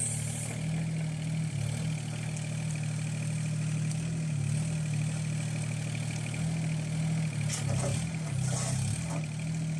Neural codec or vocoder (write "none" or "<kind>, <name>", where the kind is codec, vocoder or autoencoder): none